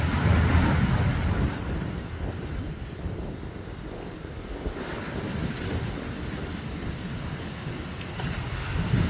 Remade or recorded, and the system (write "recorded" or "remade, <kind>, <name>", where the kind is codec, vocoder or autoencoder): recorded